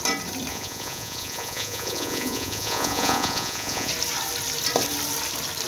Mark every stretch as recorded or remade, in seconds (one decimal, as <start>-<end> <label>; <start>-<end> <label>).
0.0-0.5 recorded; 0.5-3.9 remade; 3.9-5.7 recorded